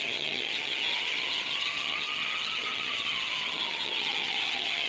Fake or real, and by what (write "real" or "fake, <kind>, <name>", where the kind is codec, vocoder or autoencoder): fake, vocoder, HiFi-GAN